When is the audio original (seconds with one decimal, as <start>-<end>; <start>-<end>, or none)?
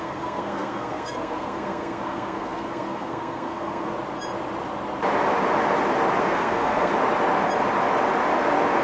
3.9-6.2; 6.9-8.8